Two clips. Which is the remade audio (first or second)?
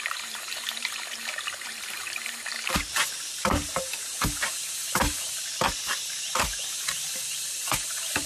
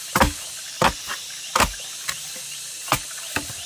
first